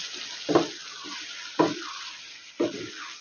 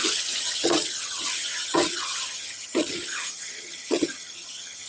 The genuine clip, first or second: first